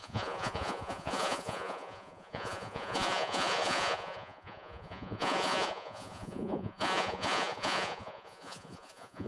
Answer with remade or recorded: remade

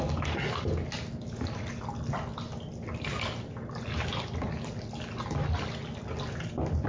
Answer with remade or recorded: recorded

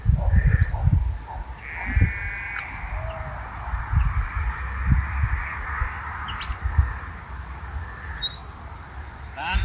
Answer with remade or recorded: recorded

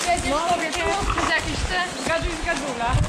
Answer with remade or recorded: recorded